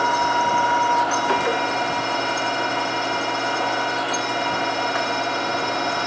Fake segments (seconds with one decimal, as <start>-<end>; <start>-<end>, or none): none